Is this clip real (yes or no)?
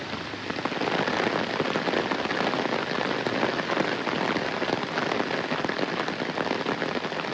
yes